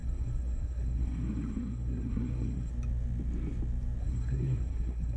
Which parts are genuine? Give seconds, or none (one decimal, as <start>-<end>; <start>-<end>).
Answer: 2.7-4.0